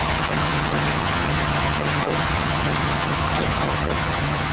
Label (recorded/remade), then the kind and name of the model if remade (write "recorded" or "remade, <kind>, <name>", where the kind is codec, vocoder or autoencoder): remade, vocoder, HiFi-GAN